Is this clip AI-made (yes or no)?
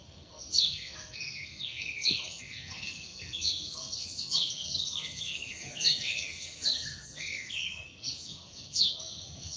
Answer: yes